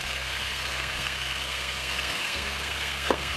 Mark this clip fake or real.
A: fake